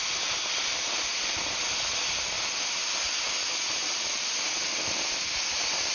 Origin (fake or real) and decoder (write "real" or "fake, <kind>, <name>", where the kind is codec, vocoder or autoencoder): real